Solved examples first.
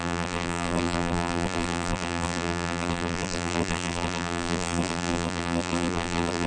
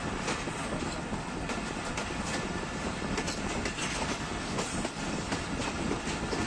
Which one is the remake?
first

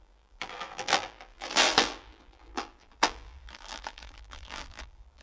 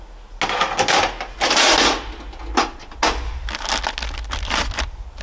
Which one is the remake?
first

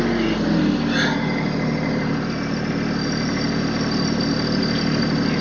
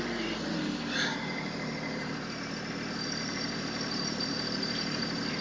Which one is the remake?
second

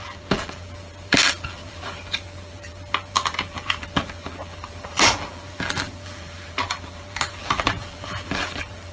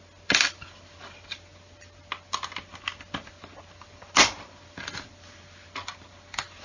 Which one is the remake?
first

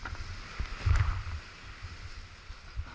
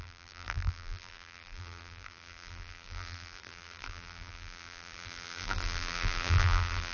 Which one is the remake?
second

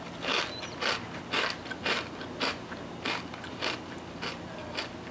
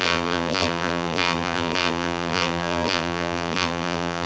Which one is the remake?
second